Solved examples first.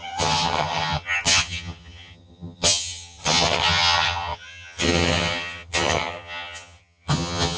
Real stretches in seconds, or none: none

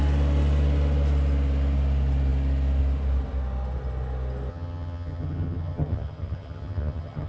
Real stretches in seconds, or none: 0.0-4.5

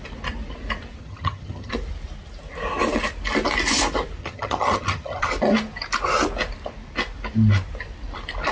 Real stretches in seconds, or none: 0.0-1.0; 1.7-4.2; 5.3-8.5

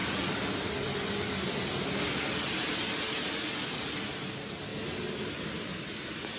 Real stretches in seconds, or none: 0.0-6.4

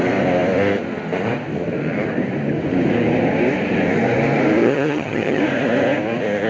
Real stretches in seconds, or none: 0.0-4.6; 5.4-6.5

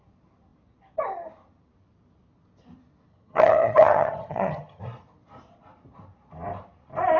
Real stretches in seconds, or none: 0.0-3.1; 4.8-7.2